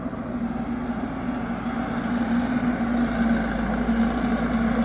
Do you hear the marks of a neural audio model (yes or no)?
no